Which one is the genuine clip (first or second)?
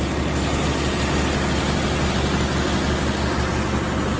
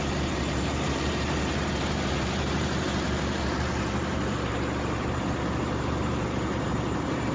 first